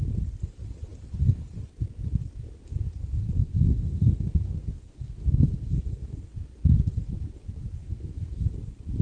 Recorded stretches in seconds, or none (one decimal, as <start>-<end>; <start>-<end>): 0.0-3.4; 6.3-7.8; 8.5-9.0